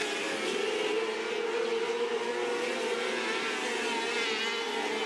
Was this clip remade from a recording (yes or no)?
no